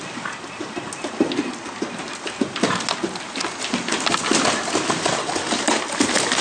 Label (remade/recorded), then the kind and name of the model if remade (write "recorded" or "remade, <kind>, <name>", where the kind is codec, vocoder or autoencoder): recorded